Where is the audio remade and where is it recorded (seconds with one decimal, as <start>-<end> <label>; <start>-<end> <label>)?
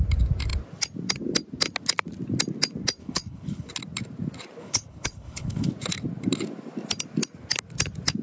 0.0-3.0 recorded; 3.0-3.7 remade; 3.7-4.6 recorded; 4.6-5.7 remade; 5.7-8.2 recorded